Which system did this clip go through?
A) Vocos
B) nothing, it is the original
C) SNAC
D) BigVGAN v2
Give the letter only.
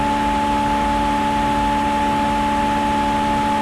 B